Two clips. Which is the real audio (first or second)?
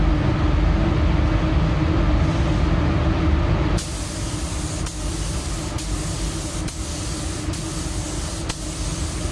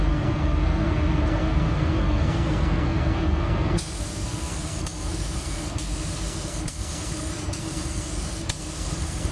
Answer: first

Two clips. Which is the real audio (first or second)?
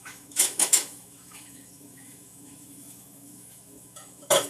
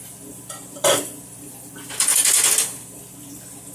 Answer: second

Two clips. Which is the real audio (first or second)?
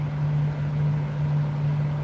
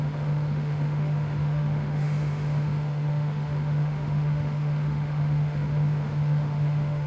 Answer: first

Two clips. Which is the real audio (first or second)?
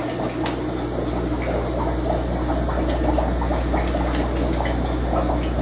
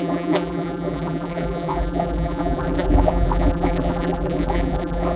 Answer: first